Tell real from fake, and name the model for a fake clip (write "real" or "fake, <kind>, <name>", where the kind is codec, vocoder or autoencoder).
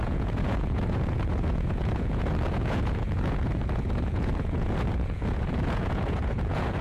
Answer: fake, vocoder, Vocos